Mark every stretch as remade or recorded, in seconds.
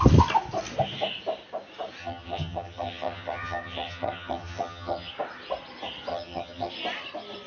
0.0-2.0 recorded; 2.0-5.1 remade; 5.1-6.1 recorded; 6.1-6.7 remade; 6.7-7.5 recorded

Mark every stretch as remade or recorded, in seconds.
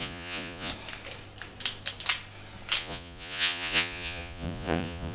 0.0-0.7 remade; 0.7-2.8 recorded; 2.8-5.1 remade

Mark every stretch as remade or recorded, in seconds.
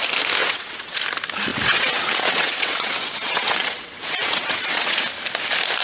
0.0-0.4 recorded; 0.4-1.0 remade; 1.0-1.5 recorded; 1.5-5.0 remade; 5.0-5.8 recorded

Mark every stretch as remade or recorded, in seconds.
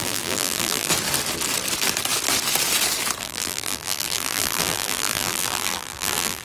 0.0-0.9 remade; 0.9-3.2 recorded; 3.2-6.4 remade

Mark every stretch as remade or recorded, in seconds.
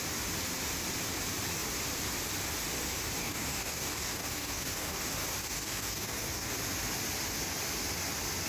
0.0-3.2 recorded; 3.2-5.0 remade; 5.0-5.4 recorded; 5.4-6.5 remade; 6.5-8.5 recorded